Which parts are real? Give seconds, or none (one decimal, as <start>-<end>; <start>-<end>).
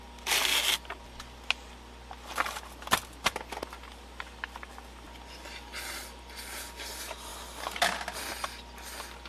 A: 0.0-9.3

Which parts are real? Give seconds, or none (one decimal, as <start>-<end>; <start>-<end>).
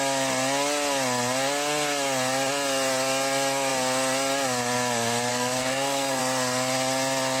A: 0.0-5.3; 6.2-7.4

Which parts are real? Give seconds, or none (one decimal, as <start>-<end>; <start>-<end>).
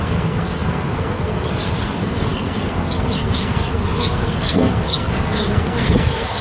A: none